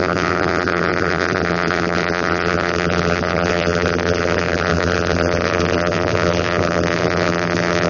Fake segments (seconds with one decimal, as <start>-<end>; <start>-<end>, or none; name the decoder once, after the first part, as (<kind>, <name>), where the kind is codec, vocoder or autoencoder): 0.0-7.9 (vocoder, BigVGAN v2)